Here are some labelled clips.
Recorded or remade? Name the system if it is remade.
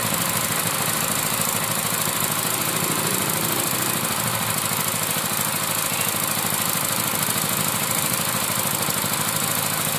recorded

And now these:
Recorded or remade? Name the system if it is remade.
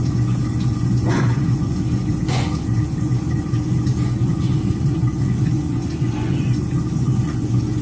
remade, vocoder, Vocos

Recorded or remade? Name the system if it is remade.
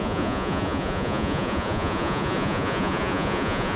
remade, vocoder, Vocos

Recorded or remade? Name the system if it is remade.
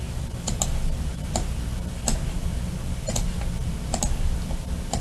recorded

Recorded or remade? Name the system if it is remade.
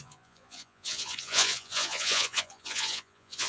remade, vocoder, Vocos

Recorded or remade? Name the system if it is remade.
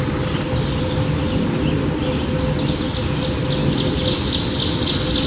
recorded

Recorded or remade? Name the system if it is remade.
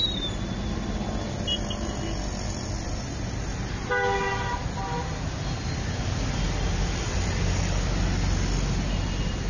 recorded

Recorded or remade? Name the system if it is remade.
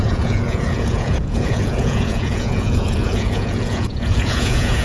remade, vocoder, Vocos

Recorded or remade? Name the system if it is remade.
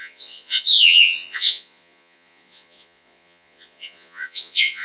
remade, vocoder, Vocos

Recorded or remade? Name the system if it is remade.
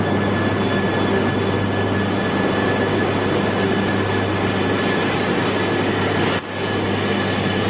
recorded